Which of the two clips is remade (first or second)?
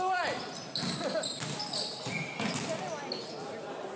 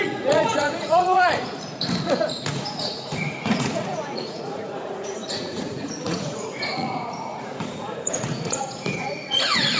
second